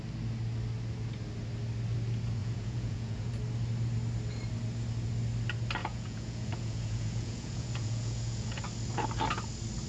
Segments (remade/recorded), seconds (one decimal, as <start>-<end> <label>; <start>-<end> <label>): 0.0-2.4 recorded; 2.4-3.3 remade; 3.3-5.8 recorded; 5.8-8.6 remade; 8.6-9.9 recorded